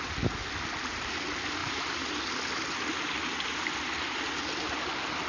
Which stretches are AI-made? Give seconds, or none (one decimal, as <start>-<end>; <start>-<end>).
1.6-4.3